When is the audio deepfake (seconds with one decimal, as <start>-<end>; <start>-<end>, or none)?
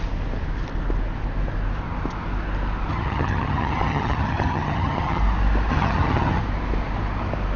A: 2.9-5.2; 5.7-6.4